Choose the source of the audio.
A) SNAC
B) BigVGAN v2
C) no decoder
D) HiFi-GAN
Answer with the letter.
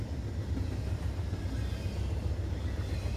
B